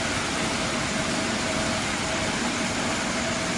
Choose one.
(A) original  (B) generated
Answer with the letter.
B